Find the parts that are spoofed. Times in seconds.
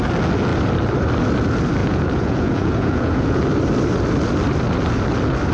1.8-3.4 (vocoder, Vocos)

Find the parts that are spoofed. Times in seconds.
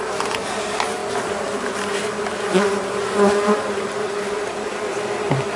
none